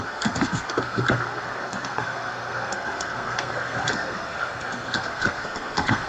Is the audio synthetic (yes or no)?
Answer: yes